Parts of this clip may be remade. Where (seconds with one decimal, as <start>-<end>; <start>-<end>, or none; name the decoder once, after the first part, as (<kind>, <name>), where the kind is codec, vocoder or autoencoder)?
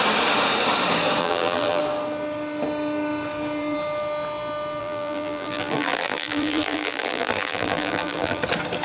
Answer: 1.2-1.8 (vocoder, BigVGAN v2); 4.8-8.4